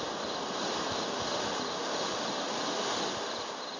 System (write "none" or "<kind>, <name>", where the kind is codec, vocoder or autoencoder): none